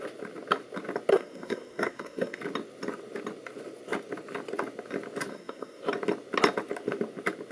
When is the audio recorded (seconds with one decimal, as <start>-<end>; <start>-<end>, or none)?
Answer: 0.0-1.1; 2.4-5.3; 5.8-7.5